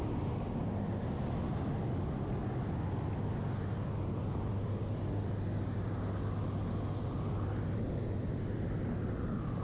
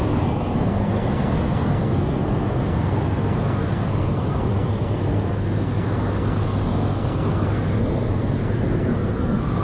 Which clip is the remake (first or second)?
second